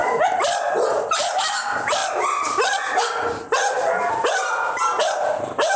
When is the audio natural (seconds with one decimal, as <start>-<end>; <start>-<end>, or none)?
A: 0.0-5.8